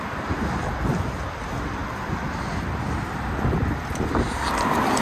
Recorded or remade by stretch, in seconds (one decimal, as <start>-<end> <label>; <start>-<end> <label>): 0.0-5.0 recorded